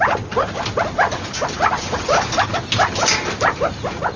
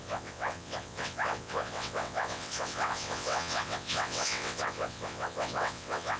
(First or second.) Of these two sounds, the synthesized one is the second